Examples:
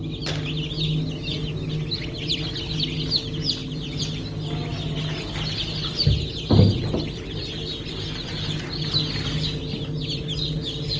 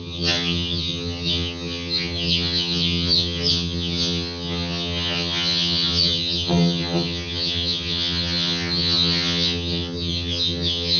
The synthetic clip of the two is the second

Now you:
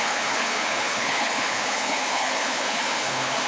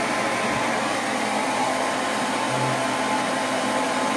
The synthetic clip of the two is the first